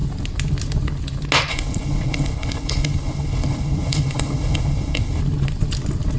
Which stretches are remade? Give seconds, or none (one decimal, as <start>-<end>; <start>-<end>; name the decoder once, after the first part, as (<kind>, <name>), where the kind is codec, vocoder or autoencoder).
1.5-5.2 (codec, HILCodec)